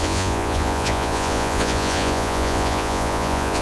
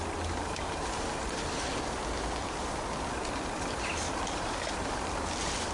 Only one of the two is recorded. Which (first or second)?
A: second